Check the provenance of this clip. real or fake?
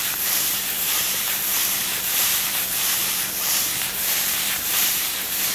fake